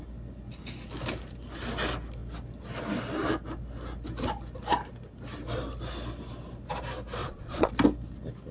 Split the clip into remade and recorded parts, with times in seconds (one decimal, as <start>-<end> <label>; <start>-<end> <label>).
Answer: 0.0-7.2 recorded; 7.2-7.7 remade; 7.7-8.5 recorded